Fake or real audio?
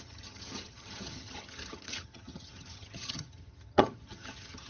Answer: fake